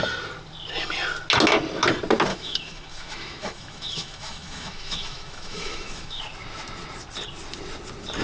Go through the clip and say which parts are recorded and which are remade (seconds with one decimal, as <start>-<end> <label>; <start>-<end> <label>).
0.0-2.3 recorded; 2.3-6.2 remade; 6.2-8.2 recorded